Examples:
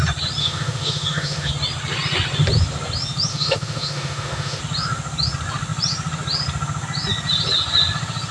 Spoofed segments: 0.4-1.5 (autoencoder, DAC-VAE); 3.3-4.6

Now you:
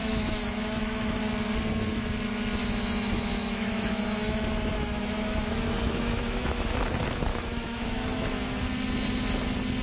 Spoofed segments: 0.0-1.2 (autoencoder, DAC-VAE); 2.6-6.7; 7.3-8.6

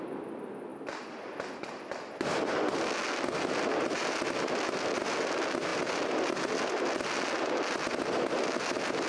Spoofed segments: 0.7-1.3 (vocoder, BigVGAN v2)

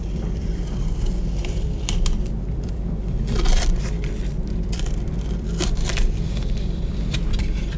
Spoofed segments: 0.0-7.8 (vocoder, BigVGAN v2)

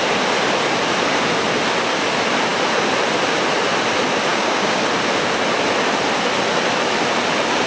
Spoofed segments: 4.3-4.8 (codec, DAC)